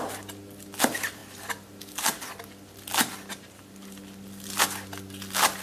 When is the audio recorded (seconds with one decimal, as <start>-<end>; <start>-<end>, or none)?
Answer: 0.0-5.6